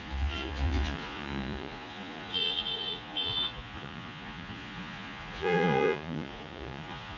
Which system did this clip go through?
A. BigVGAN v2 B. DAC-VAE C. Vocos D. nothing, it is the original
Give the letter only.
C